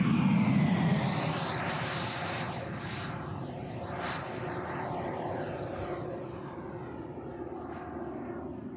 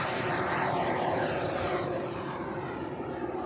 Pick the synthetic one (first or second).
second